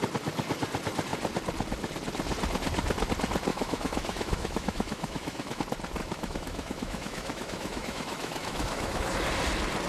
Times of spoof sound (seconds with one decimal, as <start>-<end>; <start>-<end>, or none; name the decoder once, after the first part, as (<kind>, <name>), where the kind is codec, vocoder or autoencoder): 3.5-5.6 (autoencoder, DAC-VAE); 6.0-9.1